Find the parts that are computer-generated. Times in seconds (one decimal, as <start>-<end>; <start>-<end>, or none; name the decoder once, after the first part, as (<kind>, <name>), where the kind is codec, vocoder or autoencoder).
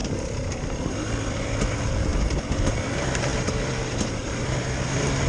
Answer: 0.0-5.3 (vocoder, BigVGAN v2)